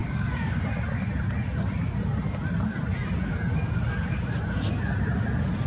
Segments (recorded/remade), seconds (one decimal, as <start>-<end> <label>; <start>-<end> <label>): 0.0-0.6 remade; 0.6-5.7 recorded